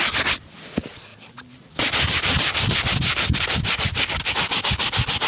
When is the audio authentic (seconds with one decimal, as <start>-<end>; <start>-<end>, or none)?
0.0-5.3